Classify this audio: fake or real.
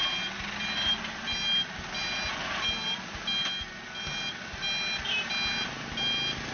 real